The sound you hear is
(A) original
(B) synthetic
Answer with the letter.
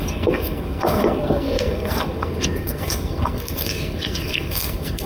B